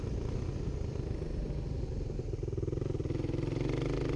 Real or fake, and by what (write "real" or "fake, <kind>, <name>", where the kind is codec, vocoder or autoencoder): real